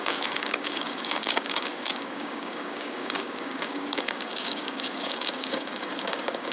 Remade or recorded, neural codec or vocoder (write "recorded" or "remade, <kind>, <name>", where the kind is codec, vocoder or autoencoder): remade, codec, DAC